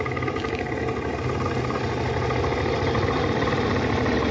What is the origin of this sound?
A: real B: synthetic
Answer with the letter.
A